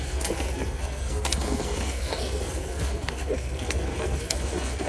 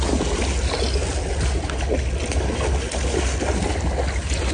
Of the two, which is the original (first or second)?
second